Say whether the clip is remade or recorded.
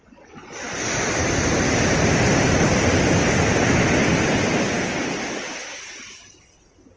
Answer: recorded